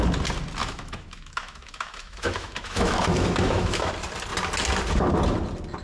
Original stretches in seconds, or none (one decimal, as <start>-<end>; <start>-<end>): 0.0-0.6; 3.9-5.8